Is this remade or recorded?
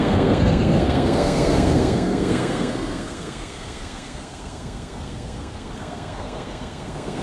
remade